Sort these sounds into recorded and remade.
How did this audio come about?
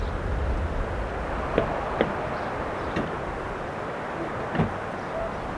remade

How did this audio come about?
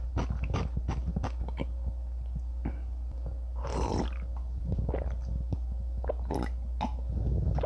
recorded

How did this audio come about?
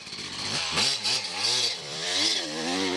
remade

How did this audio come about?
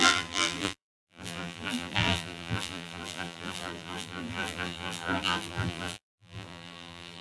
remade